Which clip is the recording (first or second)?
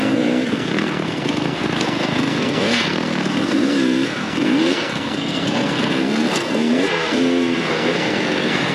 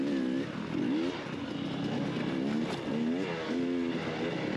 second